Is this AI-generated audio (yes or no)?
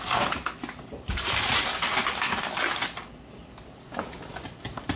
no